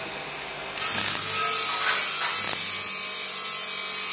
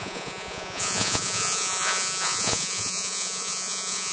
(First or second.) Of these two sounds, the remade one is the second